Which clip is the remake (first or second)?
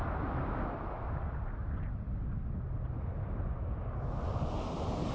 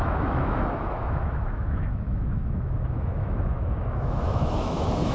second